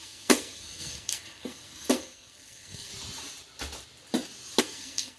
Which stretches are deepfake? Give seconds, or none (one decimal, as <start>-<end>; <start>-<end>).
0.0-2.9; 4.6-5.2